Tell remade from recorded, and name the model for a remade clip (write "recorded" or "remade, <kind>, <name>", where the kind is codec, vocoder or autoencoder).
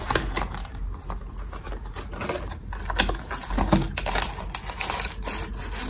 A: recorded